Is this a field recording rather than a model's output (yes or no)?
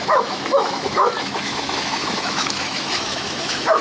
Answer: no